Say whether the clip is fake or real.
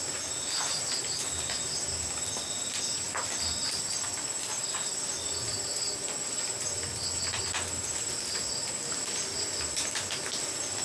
real